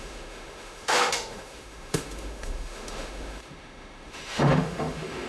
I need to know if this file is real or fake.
fake